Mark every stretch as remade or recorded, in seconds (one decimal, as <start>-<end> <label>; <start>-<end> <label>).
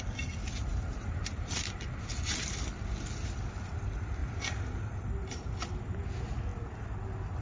0.0-0.6 recorded; 0.6-1.2 remade; 1.2-4.2 recorded; 4.2-5.4 remade; 5.4-7.4 recorded